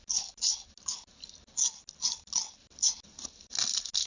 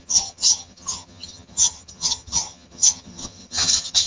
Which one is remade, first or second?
second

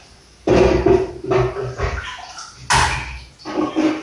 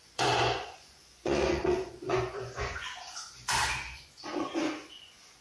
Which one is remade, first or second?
second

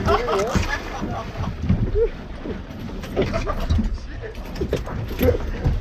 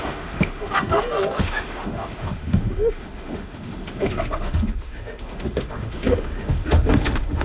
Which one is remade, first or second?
second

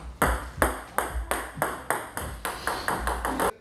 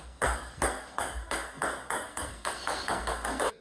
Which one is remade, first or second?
second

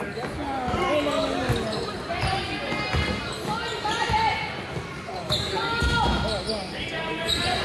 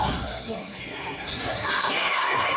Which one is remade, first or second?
second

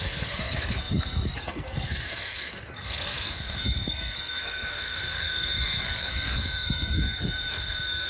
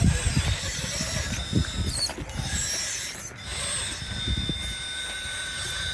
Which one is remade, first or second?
first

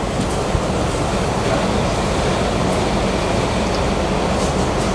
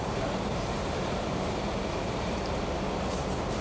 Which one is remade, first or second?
second